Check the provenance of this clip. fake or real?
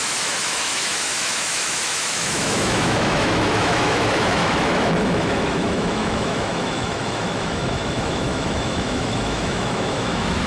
fake